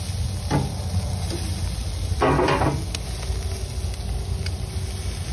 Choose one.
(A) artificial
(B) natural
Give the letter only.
B